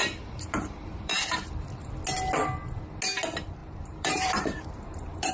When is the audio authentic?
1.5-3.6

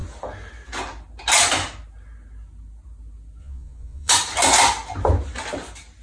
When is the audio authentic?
0.0-3.4; 4.1-6.0

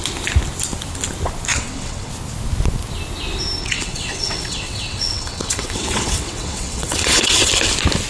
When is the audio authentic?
0.0-1.5; 2.1-3.6; 7.5-8.1